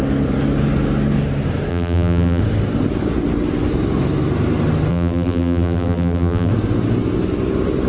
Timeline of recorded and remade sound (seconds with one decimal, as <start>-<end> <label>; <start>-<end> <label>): 0.0-1.7 recorded; 1.7-2.4 remade; 2.4-4.9 recorded; 4.9-6.5 remade; 6.5-7.9 recorded